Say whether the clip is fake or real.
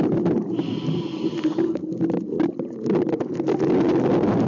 real